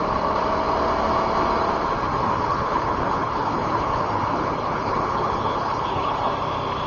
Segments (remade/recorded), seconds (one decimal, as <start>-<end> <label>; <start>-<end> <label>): 0.0-2.2 recorded; 2.2-6.3 remade; 6.3-6.9 recorded